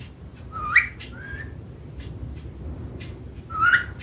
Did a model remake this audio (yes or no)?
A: no